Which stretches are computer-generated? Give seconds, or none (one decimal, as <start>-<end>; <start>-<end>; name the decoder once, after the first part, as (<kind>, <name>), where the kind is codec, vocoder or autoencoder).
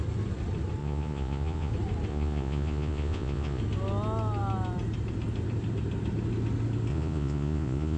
0.8-1.7 (vocoder, Vocos); 2.1-3.6; 6.9-8.0